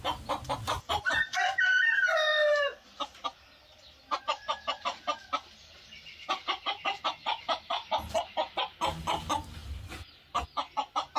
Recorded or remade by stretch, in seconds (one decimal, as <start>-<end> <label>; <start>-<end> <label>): 0.0-11.2 recorded